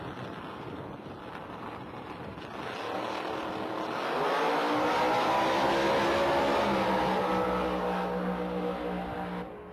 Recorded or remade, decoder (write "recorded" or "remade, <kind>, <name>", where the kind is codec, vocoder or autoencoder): recorded